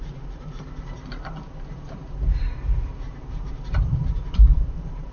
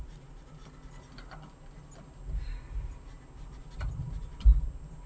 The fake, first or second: first